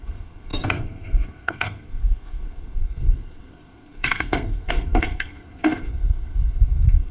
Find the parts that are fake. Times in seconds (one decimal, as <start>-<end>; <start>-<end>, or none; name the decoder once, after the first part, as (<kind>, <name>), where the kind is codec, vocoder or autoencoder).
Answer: 0.0-7.1 (codec, SNAC)